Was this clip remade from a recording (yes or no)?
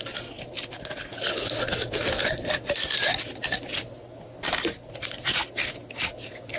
no